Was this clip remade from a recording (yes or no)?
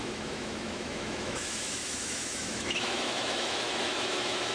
yes